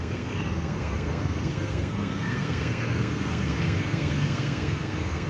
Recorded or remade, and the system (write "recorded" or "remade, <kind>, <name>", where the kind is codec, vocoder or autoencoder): remade, codec, SNAC